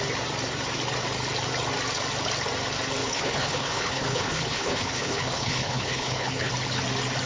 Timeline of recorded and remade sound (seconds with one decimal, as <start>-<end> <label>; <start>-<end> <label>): 0.0-3.0 recorded; 3.0-6.5 remade; 6.5-7.3 recorded